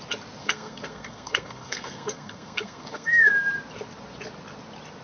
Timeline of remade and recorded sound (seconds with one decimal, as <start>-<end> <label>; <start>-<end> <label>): 0.0-0.4 recorded; 0.4-3.3 remade; 3.3-5.0 recorded